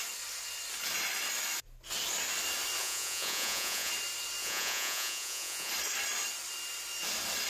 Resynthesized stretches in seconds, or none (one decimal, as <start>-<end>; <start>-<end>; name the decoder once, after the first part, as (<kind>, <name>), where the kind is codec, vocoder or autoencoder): 2.8-3.9 (vocoder, Vocos); 4.4-5.7